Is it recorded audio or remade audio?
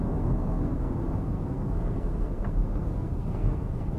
remade